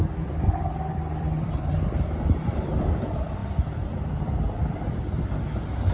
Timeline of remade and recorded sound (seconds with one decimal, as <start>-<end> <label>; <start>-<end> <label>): 0.0-5.9 remade